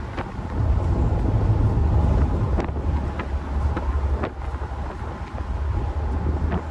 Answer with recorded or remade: recorded